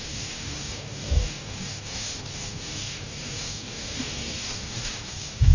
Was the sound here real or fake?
fake